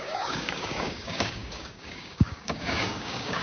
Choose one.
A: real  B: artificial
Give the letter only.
B